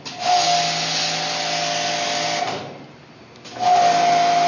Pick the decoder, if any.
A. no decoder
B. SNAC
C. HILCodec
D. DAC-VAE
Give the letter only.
A